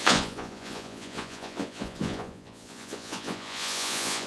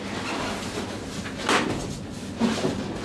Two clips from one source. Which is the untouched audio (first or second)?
second